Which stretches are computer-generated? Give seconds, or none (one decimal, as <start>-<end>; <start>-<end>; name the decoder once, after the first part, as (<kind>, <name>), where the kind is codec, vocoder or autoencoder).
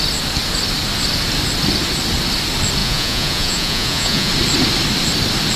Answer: 2.8-4.3 (vocoder, Vocos)